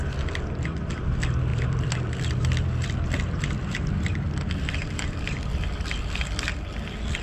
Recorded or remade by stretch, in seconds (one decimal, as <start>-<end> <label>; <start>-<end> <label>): 0.0-1.5 recorded; 1.5-5.6 remade; 5.6-7.2 recorded